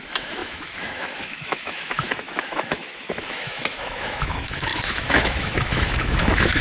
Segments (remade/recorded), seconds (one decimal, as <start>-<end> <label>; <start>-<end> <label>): 0.0-6.6 remade